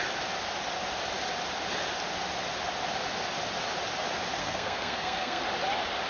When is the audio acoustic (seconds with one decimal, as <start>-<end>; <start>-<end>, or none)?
0.0-4.4; 5.4-6.1